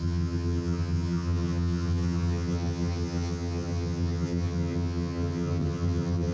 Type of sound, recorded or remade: remade